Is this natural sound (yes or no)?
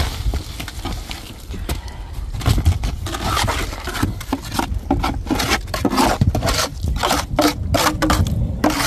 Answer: yes